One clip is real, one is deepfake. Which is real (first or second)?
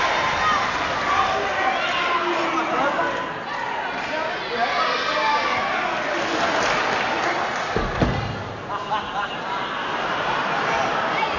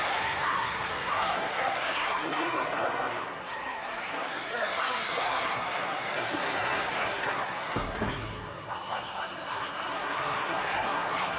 first